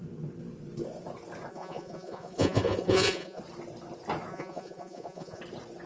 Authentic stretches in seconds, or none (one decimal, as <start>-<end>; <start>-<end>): 0.0-1.5; 3.4-4.3; 5.4-5.9